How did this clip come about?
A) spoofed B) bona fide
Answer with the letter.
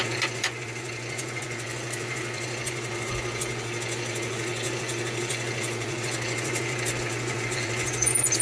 A